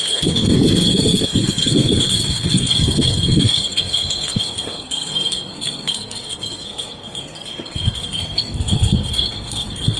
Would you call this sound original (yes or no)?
no